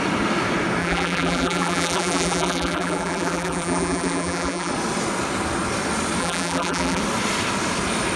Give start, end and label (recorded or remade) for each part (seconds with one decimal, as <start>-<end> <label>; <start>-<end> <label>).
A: 0.0-0.8 recorded; 0.8-4.7 remade; 4.7-6.2 recorded; 6.2-7.0 remade; 7.0-8.2 recorded